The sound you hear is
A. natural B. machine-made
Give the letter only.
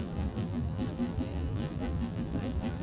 B